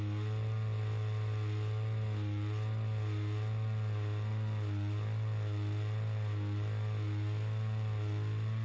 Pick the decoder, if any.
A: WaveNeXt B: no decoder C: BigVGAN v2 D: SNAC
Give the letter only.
B